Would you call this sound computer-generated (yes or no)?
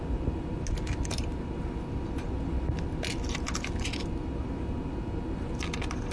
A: no